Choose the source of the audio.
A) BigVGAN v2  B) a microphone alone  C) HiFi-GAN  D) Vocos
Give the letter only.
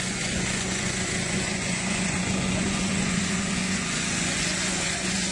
D